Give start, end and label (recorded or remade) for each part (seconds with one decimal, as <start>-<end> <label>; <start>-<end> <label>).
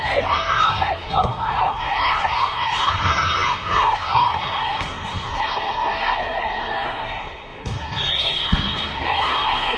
0.0-9.8 remade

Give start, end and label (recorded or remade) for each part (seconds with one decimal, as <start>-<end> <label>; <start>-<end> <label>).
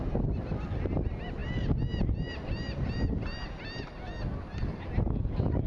0.0-5.7 recorded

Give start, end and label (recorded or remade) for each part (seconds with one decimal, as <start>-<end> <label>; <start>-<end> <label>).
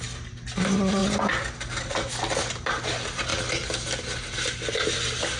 0.0-5.4 recorded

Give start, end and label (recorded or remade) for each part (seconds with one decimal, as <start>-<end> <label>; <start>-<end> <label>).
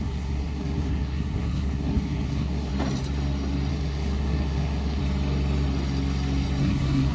0.0-2.7 remade; 2.7-3.7 recorded; 3.7-5.0 remade; 5.0-6.6 recorded; 6.6-7.1 remade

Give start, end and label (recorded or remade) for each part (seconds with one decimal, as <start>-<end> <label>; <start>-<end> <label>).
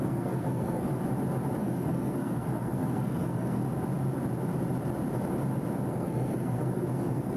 0.0-0.9 remade; 0.9-1.6 recorded; 1.6-3.6 remade; 3.6-5.9 recorded; 5.9-7.4 remade